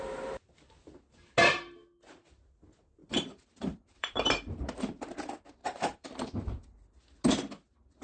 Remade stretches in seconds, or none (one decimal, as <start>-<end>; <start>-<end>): 3.0-5.0; 5.6-6.6